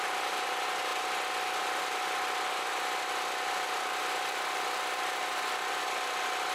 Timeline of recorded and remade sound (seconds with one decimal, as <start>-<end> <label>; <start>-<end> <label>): 0.0-6.5 recorded

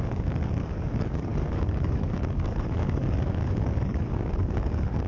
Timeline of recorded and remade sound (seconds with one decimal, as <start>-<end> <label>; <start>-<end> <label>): 0.0-5.1 remade